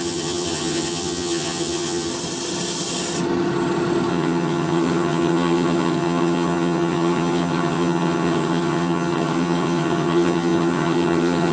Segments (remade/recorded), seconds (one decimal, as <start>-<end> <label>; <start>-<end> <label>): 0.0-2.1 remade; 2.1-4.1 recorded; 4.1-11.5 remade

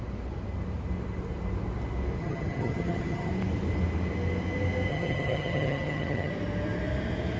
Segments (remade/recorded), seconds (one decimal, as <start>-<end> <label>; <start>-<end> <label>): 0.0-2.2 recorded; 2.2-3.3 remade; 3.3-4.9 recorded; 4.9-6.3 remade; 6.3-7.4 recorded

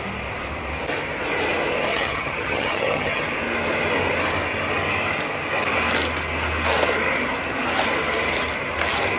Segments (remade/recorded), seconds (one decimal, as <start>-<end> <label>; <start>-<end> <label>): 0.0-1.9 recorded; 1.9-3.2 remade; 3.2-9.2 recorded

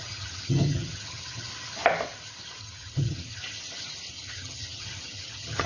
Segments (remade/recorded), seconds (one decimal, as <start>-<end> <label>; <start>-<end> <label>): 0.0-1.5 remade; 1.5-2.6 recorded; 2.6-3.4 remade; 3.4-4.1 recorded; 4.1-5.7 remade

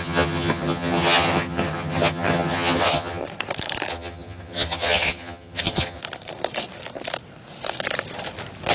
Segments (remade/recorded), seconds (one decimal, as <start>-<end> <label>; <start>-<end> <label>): 0.0-3.2 remade; 3.2-3.9 recorded; 3.9-6.0 remade; 6.0-8.7 recorded